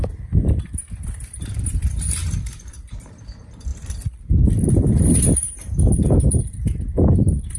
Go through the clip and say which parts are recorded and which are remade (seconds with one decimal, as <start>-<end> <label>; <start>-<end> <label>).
0.0-7.6 remade